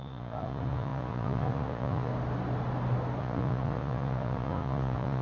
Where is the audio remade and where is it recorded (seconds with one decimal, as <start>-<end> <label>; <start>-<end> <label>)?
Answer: 0.0-2.1 remade; 2.1-3.2 recorded; 3.2-5.2 remade